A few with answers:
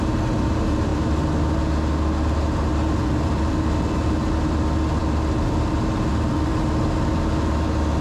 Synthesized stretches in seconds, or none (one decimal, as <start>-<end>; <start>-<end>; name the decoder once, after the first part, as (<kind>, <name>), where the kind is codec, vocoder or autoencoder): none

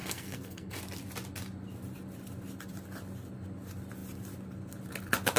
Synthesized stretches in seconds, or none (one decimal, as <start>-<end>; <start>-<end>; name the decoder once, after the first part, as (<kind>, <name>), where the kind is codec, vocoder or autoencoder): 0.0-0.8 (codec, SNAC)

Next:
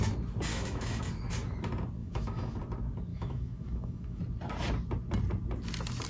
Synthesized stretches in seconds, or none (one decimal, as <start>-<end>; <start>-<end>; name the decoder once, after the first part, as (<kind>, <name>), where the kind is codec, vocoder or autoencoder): 0.5-1.0 (autoencoder, DAC-VAE); 2.0-2.6; 3.1-4.2